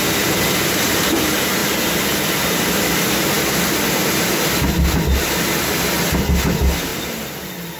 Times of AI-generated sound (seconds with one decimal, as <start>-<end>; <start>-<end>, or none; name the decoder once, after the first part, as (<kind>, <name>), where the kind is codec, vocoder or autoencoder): none